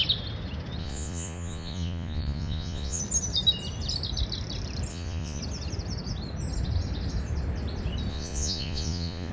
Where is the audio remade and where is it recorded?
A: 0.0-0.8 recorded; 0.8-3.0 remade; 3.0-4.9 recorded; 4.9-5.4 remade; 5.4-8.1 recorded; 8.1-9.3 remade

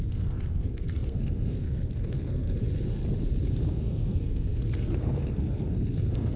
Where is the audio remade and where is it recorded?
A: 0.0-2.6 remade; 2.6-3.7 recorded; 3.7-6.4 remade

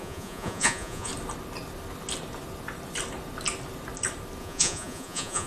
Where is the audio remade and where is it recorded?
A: 0.0-1.1 remade; 1.1-4.4 recorded; 4.4-5.5 remade

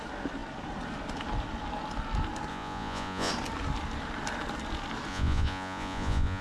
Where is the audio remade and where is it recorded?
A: 0.0-2.5 recorded; 2.5-3.3 remade; 3.3-5.1 recorded; 5.1-6.4 remade

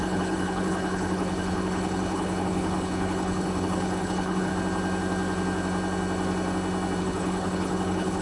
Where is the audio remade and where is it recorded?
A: 0.0-4.5 remade; 4.5-7.0 recorded; 7.0-8.2 remade

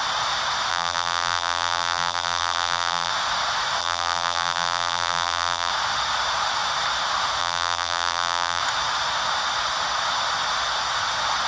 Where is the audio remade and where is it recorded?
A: 0.0-0.7 recorded; 0.7-3.1 remade; 3.1-3.8 recorded; 3.8-5.7 remade; 5.7-7.4 recorded; 7.4-8.6 remade; 8.6-11.5 recorded

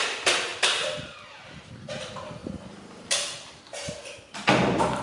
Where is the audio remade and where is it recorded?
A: 0.0-5.0 remade

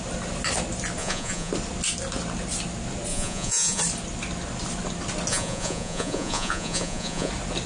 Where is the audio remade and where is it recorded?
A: 0.0-1.0 recorded; 1.0-1.5 remade; 1.5-3.1 recorded; 3.1-3.8 remade; 3.8-5.3 recorded; 5.3-7.3 remade; 7.3-7.7 recorded